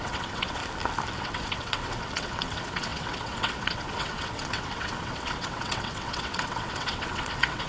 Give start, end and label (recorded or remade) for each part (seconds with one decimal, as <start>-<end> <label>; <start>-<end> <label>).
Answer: 0.0-0.6 remade; 0.6-1.2 recorded; 1.2-7.7 remade